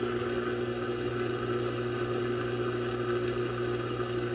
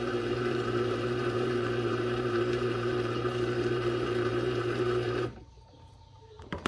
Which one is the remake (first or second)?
second